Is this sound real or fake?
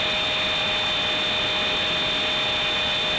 real